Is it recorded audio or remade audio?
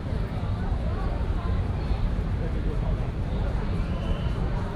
remade